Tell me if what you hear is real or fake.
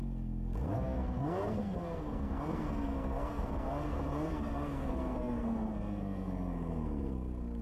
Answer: fake